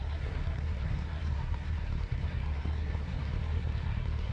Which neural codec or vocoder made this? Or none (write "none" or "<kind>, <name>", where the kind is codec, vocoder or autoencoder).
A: codec, SNAC